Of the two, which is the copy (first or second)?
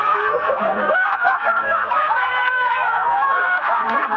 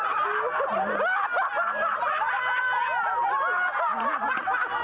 first